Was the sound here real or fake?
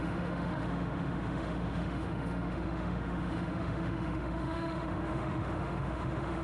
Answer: fake